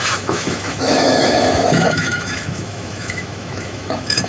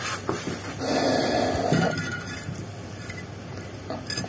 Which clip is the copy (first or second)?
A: first